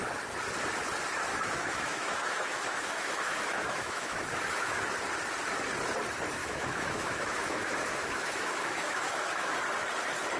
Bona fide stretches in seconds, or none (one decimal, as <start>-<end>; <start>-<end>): 0.0-1.3; 4.8-6.4; 9.5-10.4